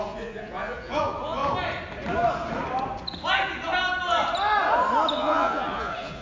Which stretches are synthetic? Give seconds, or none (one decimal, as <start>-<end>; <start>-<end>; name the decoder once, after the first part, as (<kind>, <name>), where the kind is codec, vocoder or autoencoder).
0.0-1.4 (vocoder, Vocos); 5.1-6.2